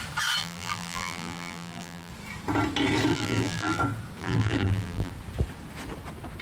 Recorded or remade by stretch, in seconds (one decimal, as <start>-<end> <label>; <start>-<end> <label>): 0.0-0.4 recorded; 0.4-2.1 remade; 2.1-3.1 recorded; 3.1-3.8 remade; 3.8-4.2 recorded; 4.2-5.1 remade; 5.1-6.4 recorded